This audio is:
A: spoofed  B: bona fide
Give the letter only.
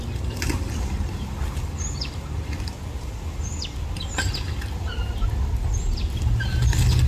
B